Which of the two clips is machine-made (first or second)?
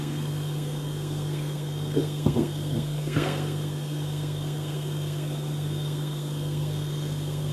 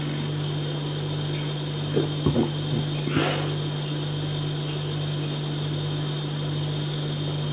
first